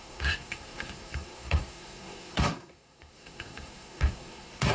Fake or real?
fake